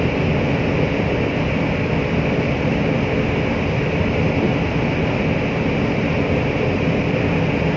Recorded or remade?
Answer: recorded